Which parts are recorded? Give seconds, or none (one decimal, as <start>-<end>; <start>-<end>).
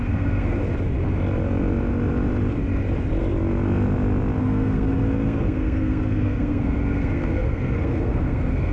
0.6-4.4